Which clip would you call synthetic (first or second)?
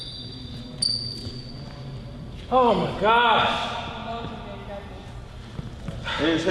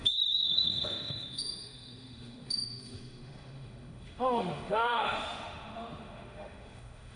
second